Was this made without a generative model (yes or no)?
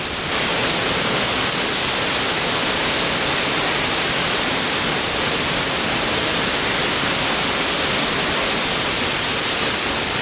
yes